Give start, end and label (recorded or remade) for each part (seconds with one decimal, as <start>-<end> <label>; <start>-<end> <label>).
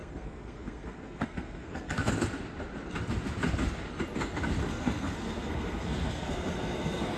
0.0-2.1 remade; 2.1-4.6 recorded; 4.6-7.2 remade